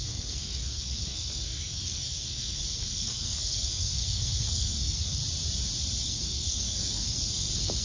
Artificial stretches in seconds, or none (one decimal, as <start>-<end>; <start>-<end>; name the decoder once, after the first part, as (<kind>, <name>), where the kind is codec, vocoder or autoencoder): 0.0-5.2 (codec, SNAC); 6.0-7.8